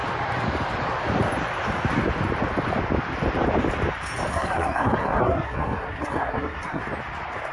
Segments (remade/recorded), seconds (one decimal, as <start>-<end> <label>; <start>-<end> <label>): 0.0-4.3 recorded; 4.3-6.8 remade; 6.8-7.5 recorded